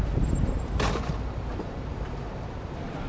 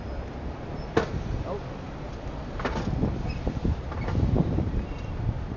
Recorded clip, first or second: second